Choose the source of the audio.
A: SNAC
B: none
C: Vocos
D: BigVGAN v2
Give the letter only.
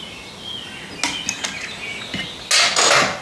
B